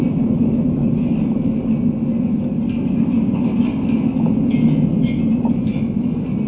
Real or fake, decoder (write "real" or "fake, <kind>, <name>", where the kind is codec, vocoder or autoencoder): real